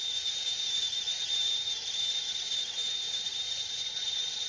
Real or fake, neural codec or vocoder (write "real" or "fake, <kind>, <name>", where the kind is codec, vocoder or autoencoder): real